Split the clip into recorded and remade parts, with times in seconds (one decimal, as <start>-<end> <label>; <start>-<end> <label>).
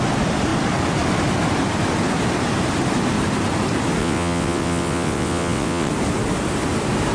0.0-4.0 recorded; 4.0-5.9 remade; 5.9-7.1 recorded